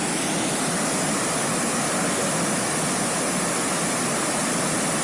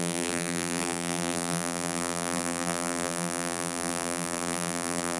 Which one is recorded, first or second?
first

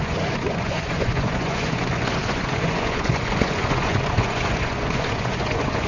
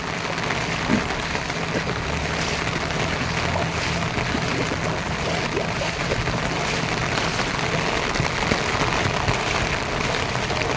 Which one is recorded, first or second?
second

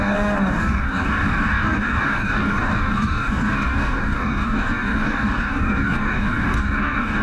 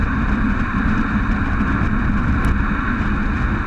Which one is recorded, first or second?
second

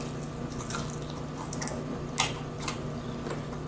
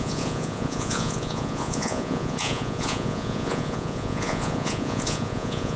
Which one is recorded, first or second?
first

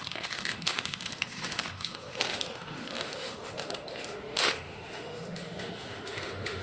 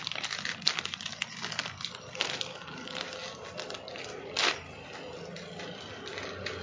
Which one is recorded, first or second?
second